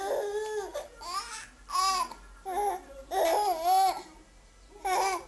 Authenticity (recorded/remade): recorded